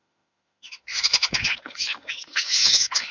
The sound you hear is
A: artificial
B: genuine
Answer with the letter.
A